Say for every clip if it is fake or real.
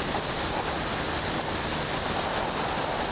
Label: real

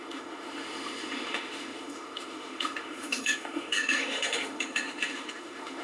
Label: fake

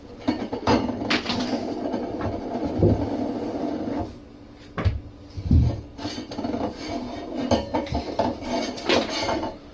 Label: real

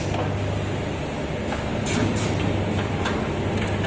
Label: real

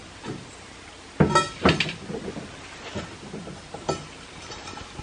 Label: real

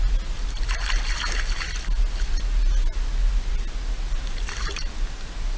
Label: real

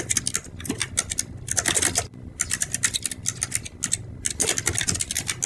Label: real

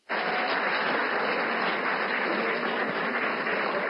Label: real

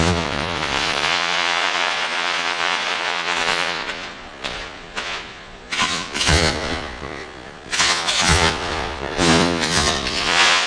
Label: fake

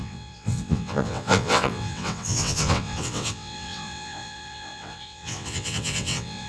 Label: fake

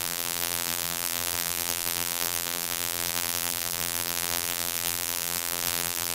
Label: fake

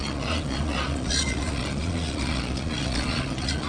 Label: fake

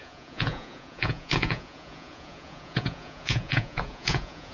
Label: fake